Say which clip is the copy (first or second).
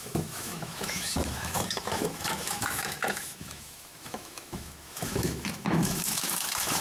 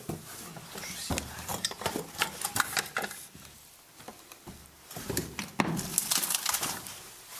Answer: first